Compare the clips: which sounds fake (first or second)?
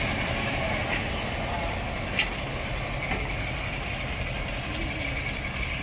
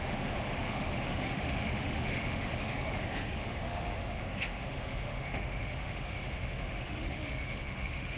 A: second